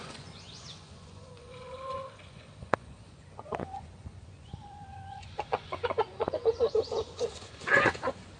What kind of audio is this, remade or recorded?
remade